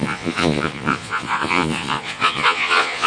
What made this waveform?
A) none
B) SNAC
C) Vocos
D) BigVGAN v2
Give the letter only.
C